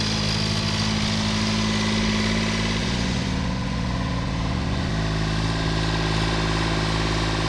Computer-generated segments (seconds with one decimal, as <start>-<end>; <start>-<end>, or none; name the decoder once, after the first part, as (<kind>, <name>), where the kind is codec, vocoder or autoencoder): 2.8-4.9 (vocoder, Vocos)